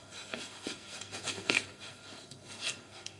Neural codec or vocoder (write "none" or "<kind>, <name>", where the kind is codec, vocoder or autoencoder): codec, SNAC